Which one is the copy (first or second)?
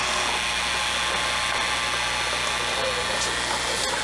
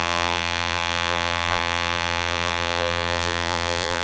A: second